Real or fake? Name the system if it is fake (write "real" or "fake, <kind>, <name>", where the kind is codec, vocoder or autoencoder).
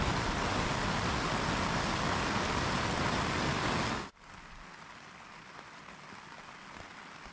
real